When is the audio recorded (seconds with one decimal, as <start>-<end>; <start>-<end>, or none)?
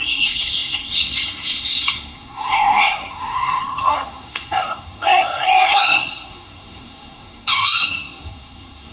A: none